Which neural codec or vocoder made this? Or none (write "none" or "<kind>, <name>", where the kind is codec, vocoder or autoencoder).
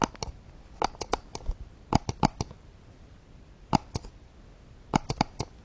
none